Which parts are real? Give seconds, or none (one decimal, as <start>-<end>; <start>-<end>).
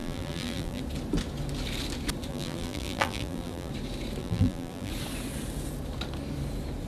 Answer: 0.8-2.3; 3.7-4.2; 4.9-6.9